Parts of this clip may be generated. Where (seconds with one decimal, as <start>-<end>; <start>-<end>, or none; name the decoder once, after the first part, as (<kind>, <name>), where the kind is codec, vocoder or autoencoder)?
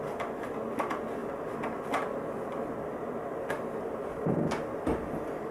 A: none